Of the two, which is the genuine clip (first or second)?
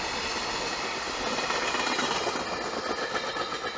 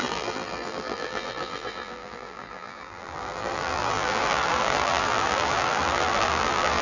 first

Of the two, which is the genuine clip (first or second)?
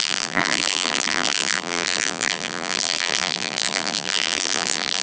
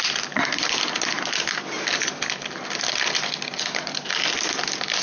second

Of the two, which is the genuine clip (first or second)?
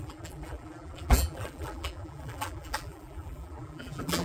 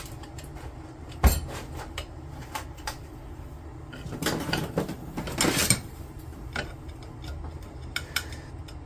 second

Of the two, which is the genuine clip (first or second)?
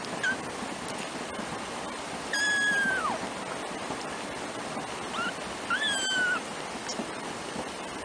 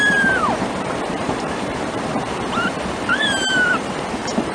first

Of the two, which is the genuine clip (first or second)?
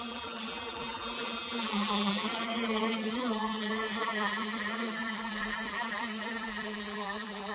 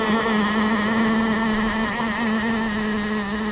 second